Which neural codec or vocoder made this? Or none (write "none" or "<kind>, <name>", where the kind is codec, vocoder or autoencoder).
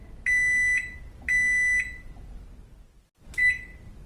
none